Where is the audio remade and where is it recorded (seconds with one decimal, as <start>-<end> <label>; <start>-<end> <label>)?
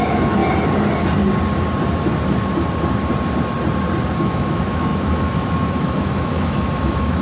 0.0-0.4 remade; 0.4-4.2 recorded; 4.2-7.2 remade